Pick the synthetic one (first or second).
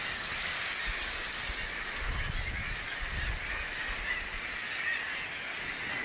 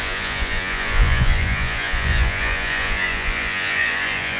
second